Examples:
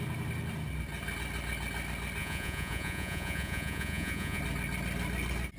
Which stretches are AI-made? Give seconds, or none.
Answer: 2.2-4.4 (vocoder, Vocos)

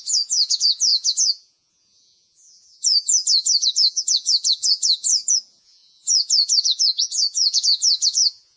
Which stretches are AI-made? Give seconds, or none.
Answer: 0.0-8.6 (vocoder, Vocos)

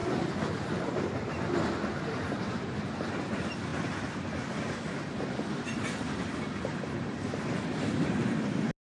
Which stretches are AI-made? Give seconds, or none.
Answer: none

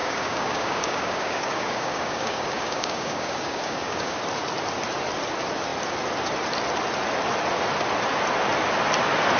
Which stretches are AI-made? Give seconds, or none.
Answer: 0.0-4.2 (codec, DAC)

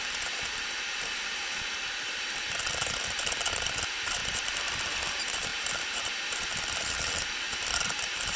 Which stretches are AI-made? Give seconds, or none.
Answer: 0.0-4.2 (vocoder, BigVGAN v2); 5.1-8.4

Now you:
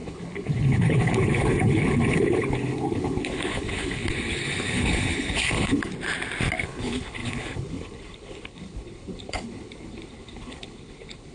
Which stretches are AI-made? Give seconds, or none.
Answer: 0.0-5.9 (codec, HILCodec); 6.6-11.3

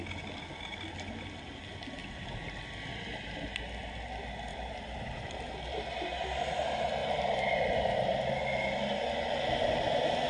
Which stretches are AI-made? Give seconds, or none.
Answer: 4.5-5.5 (vocoder, BigVGAN v2); 7.0-8.1